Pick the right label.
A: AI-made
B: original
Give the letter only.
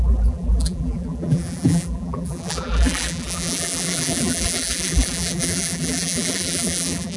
A